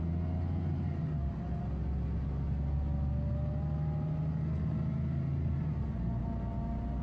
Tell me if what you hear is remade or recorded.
recorded